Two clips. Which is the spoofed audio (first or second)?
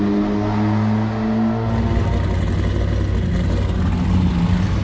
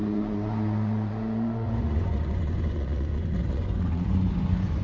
second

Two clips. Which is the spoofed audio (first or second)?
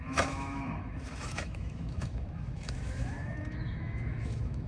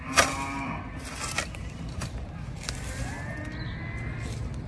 first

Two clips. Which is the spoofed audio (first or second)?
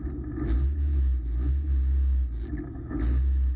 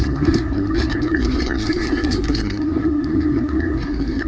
second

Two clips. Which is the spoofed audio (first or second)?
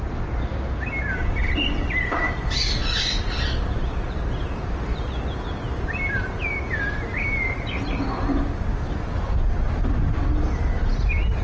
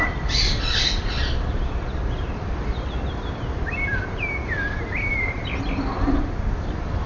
second